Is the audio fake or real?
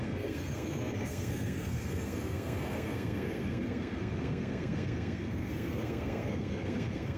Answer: fake